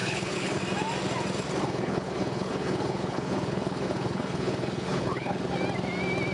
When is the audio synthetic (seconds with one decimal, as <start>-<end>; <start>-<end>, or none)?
0.0-0.6; 1.6-5.4